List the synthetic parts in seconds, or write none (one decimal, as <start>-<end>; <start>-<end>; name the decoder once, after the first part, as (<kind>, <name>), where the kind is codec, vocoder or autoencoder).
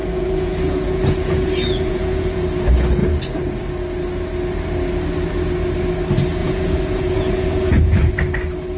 0.0-2.4 (vocoder, Vocos); 6.4-8.1